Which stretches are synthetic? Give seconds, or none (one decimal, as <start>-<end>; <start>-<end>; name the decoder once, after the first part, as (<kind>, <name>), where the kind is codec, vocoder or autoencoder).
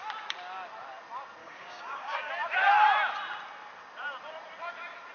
1.4-2.3 (codec, DAC)